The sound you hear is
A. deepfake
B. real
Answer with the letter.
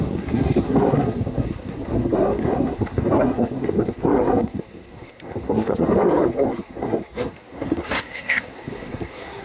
A